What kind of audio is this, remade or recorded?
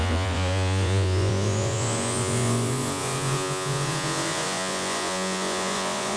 remade